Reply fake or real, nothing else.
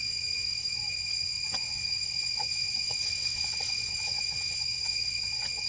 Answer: fake